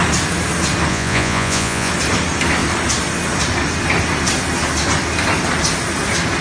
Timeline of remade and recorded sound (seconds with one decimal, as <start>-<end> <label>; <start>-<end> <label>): 0.0-0.9 recorded; 0.9-1.9 remade; 1.9-6.4 recorded